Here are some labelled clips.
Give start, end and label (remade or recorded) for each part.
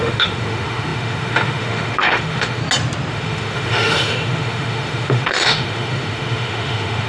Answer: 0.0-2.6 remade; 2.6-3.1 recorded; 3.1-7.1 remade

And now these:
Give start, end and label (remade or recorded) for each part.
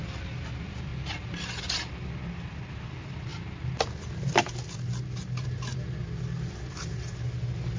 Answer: 0.0-7.8 recorded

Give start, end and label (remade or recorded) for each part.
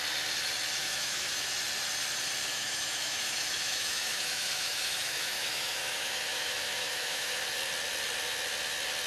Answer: 0.0-0.8 recorded; 0.8-1.4 remade; 1.4-2.5 recorded; 2.5-7.4 remade; 7.4-9.1 recorded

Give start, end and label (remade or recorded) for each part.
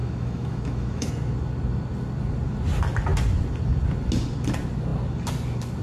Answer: 0.0-1.1 remade; 1.1-5.8 recorded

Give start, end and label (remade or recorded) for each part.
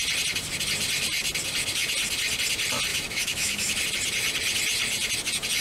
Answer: 0.0-2.9 recorded; 2.9-3.8 remade; 3.8-5.6 recorded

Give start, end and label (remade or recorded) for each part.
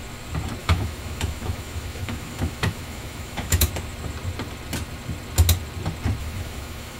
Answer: 0.0-0.6 recorded; 0.6-3.7 remade; 3.7-6.2 recorded; 6.2-7.0 remade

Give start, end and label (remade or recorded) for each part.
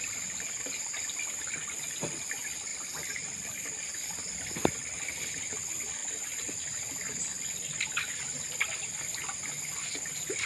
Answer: 0.0-10.5 recorded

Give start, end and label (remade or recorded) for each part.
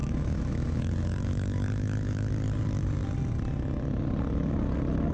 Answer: 0.0-2.3 remade; 2.3-5.1 recorded